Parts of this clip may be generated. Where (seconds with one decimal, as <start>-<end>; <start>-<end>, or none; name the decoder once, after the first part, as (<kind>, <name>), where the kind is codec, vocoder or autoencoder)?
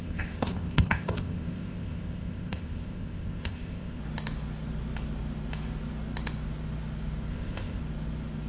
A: 0.0-4.0 (codec, ZipCodec); 7.3-7.8